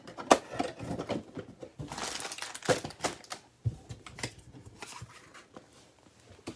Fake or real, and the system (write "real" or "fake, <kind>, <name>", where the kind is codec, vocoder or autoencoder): real